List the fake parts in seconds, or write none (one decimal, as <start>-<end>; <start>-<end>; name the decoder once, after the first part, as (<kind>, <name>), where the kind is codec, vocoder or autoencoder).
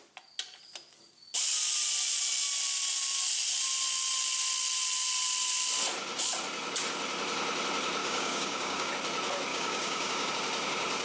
8.0-8.9 (codec, DAC); 9.5-10.3